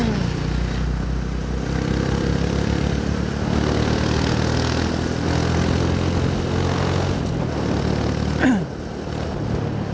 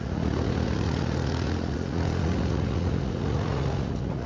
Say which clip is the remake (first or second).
second